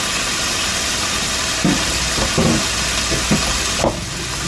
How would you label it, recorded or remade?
recorded